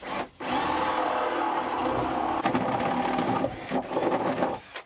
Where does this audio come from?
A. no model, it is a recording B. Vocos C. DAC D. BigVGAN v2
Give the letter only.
A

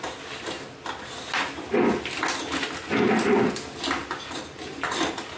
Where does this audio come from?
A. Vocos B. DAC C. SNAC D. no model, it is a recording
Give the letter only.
D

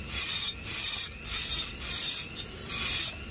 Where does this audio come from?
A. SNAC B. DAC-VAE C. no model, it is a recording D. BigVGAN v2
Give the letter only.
D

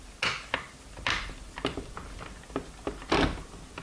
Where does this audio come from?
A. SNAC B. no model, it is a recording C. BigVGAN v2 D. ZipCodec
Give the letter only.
B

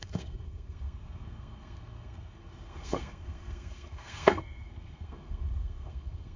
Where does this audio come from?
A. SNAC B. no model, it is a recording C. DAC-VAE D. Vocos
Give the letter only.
A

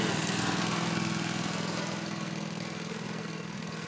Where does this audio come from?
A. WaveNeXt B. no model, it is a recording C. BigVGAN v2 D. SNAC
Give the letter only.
D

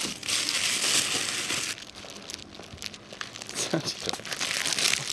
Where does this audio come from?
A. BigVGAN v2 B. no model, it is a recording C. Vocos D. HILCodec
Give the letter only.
B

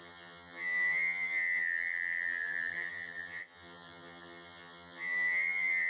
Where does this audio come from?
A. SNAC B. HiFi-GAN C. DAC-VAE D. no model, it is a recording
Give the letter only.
B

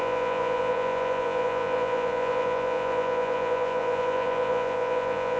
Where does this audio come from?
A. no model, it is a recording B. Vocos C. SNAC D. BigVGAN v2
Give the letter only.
B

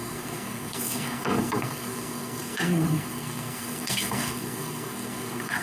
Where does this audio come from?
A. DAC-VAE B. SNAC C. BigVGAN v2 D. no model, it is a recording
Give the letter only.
B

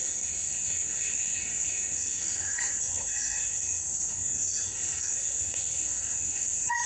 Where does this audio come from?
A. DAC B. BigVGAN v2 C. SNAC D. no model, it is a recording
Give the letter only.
C